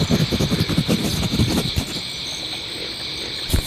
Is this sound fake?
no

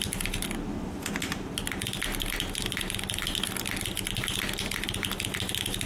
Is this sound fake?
no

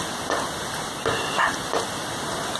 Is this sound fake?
no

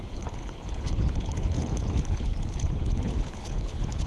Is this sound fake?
yes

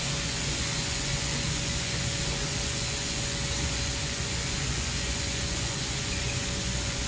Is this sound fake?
yes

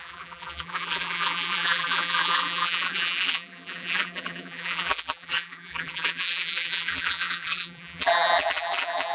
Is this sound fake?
yes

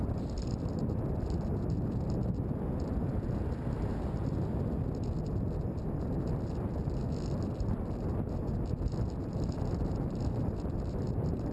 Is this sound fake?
no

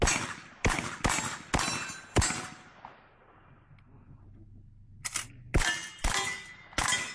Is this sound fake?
no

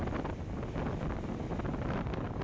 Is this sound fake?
no